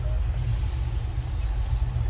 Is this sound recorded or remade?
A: recorded